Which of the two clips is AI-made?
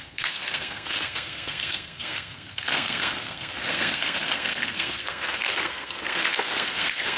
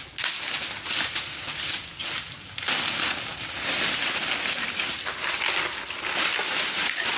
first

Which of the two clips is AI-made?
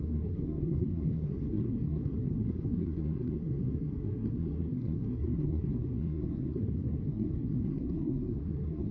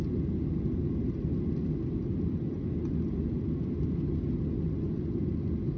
first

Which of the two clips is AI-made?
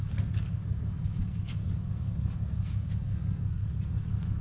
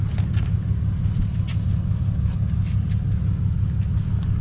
first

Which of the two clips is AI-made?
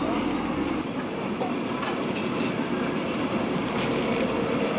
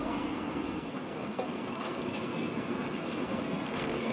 second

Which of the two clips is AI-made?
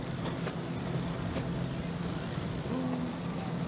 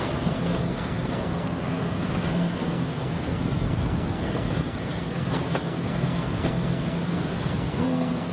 second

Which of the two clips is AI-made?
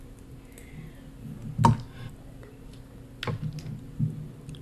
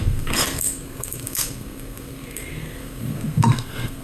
second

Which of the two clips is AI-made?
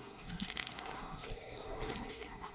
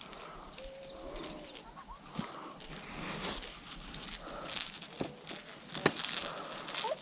first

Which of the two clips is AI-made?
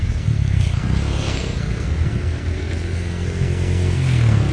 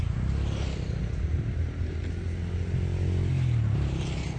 first